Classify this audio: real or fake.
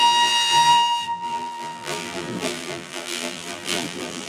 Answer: fake